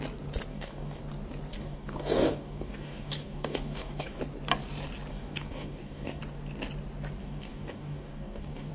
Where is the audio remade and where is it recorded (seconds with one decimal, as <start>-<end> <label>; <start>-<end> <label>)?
0.0-0.5 recorded; 0.5-1.0 remade; 1.0-1.5 recorded; 1.5-4.2 remade; 4.2-5.1 recorded; 5.1-6.2 remade; 6.2-7.2 recorded; 7.2-8.7 remade